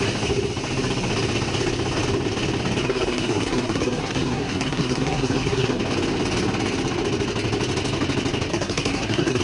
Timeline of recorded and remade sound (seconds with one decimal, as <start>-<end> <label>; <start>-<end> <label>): 0.0-2.8 recorded; 2.8-5.8 remade; 5.8-8.5 recorded; 8.5-9.4 remade